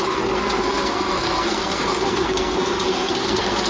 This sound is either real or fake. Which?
fake